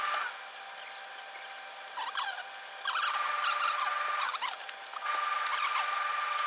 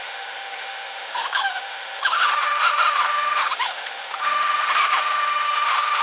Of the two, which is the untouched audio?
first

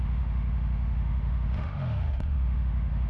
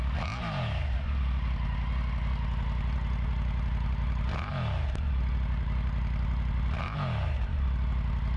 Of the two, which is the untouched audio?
second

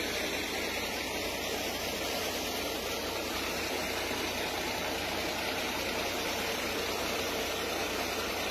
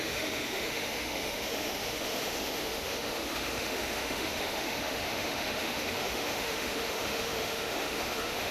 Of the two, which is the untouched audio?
first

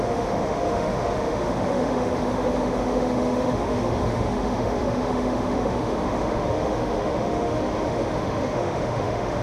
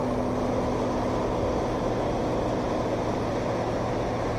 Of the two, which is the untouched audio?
second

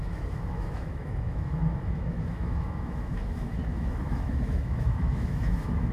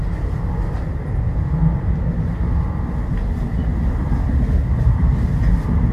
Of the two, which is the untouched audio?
second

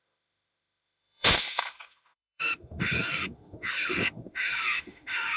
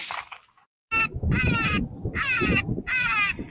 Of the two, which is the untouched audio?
second